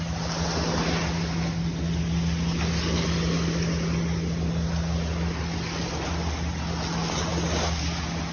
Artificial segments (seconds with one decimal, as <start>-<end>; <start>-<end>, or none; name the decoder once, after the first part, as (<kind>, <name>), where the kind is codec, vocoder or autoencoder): none